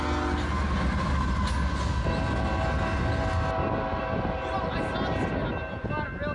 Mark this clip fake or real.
real